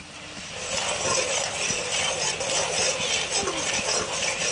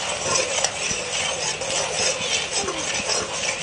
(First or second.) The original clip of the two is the second